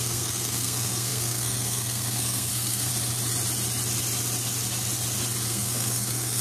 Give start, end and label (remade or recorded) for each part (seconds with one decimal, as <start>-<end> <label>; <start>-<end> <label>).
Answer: 0.0-2.9 remade; 2.9-5.5 recorded; 5.5-6.4 remade